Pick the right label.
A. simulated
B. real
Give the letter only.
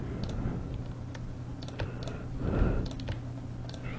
B